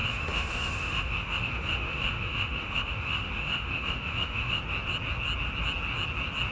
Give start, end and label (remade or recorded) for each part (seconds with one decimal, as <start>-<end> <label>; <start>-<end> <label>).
0.0-4.6 remade; 4.6-6.5 recorded